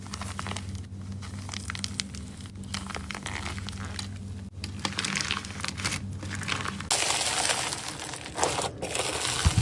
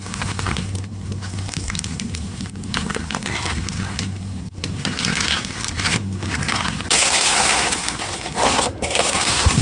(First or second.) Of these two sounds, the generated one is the second